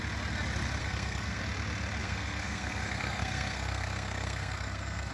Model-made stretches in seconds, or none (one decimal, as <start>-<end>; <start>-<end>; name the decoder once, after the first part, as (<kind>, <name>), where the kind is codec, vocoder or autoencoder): 0.8-1.4 (codec, SNAC); 2.0-5.1